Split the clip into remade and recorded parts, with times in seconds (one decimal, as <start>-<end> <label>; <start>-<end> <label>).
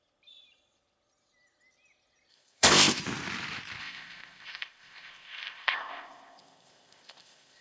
0.0-2.3 recorded; 2.3-3.0 remade; 3.0-3.8 recorded; 3.8-7.6 remade